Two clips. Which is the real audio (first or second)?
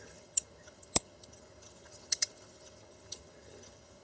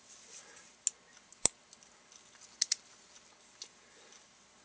second